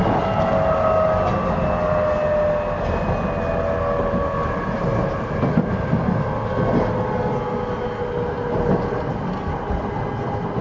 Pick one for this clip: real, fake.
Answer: real